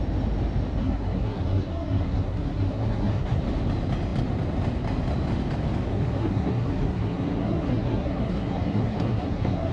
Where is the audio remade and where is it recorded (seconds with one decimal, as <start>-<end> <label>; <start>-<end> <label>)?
0.0-0.8 recorded; 0.8-3.4 remade; 3.4-5.9 recorded; 5.9-9.7 remade